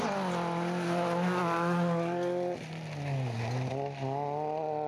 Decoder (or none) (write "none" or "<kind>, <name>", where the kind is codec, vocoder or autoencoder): none